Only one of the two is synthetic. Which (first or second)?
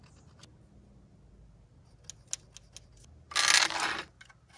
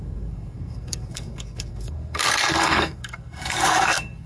second